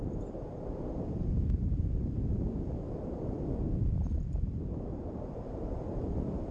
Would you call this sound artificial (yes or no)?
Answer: yes